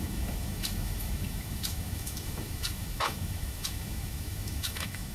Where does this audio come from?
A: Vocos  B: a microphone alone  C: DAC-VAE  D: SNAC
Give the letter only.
C